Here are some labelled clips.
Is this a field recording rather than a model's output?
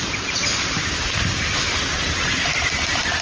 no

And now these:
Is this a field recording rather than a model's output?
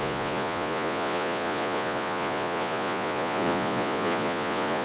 no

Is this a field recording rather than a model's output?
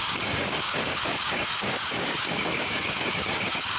no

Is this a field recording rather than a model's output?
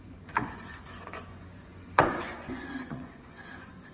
no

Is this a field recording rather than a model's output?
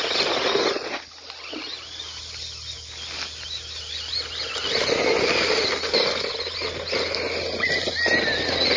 yes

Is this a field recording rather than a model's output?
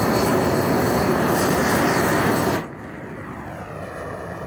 yes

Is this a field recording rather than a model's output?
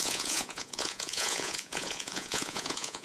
no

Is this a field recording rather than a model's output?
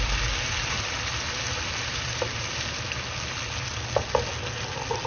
yes